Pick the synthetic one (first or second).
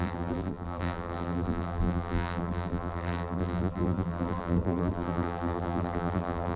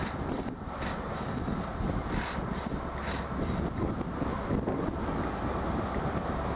first